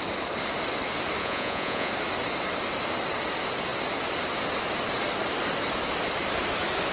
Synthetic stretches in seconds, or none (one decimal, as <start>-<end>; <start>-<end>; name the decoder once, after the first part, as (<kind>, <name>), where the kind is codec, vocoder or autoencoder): 1.2-1.9 (vocoder, Vocos)